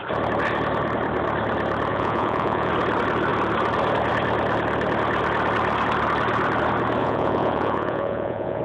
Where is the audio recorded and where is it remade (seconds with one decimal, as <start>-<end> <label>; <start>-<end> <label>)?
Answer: 0.0-1.9 recorded; 1.9-2.7 remade; 2.7-7.0 recorded; 7.0-8.6 remade